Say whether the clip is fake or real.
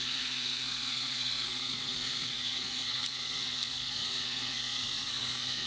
fake